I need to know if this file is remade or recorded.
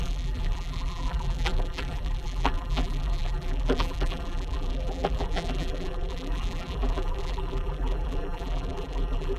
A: remade